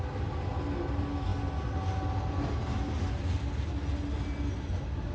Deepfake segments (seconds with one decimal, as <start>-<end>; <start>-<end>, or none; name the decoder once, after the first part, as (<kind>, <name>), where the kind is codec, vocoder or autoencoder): none